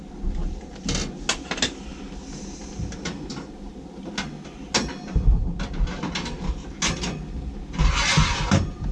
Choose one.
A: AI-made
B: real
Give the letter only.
B